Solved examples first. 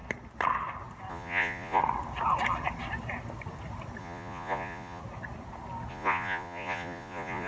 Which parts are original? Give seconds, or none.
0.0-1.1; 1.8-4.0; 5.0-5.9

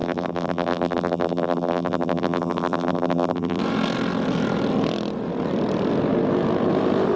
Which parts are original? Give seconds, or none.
3.6-7.2

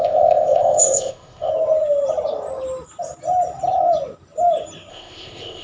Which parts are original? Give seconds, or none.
1.5-4.9

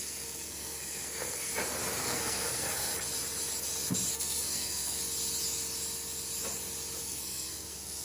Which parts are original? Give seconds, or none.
1.5-2.0; 2.9-4.1; 5.0-7.0

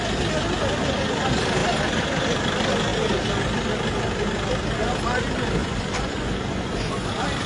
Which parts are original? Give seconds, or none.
0.0-5.6; 7.1-7.5

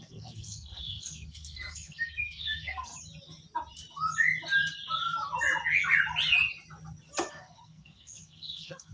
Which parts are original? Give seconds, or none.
2.9-7.3

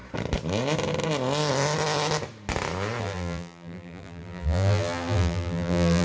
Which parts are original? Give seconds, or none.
0.0-3.0